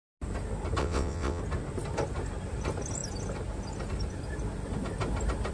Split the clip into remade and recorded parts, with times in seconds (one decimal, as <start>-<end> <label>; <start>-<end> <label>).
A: 0.0-0.8 recorded; 0.8-1.4 remade; 1.4-5.5 recorded